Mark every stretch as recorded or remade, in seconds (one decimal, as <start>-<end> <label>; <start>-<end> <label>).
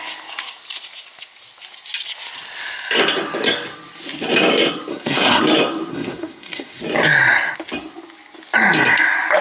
0.0-4.9 recorded; 4.9-5.4 remade; 5.4-5.9 recorded; 5.9-6.8 remade; 6.8-9.4 recorded